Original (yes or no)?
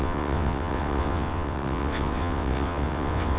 no